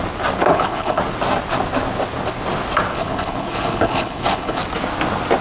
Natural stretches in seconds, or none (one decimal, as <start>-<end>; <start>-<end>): 0.0-0.5; 1.0-2.9; 4.6-5.4